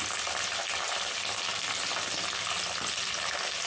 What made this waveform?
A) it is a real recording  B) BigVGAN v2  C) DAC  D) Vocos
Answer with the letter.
A